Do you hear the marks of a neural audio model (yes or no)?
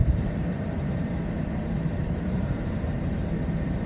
yes